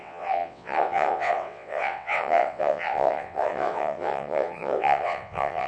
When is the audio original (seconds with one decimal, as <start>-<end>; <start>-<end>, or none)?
none